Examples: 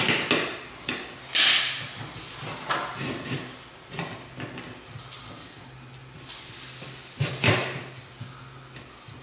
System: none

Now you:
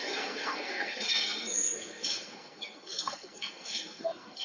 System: codec, SNAC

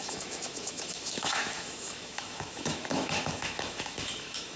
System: autoencoder, DAC-VAE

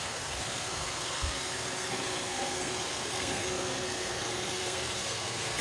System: codec, SNAC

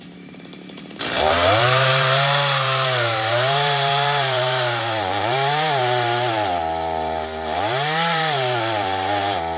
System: vocoder, BigVGAN v2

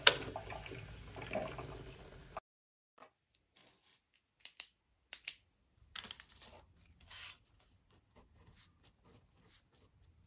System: none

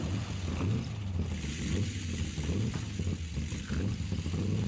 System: none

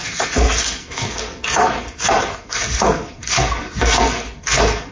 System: codec, SNAC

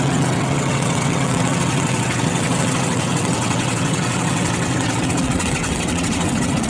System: vocoder, WaveNeXt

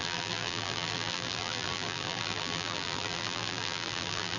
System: vocoder, BigVGAN v2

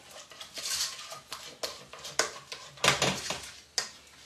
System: none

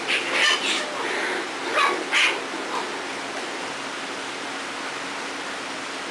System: none